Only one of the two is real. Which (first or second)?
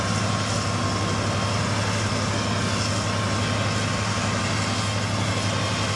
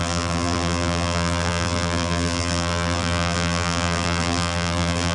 first